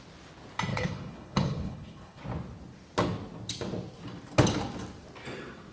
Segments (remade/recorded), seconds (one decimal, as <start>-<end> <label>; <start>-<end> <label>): 0.0-0.7 recorded; 0.7-2.2 remade; 2.2-5.7 recorded